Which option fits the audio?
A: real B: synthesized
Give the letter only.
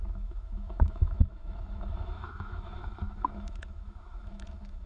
B